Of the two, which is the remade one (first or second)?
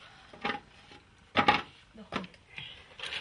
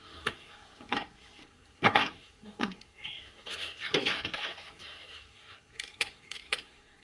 second